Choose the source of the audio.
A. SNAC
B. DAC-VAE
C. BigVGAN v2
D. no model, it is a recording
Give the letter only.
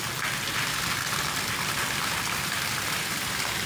D